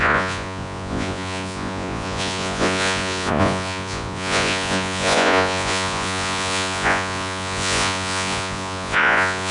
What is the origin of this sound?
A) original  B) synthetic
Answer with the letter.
B